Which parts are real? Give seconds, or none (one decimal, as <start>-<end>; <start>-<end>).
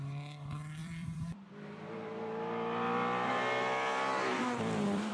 0.0-0.8; 3.3-4.3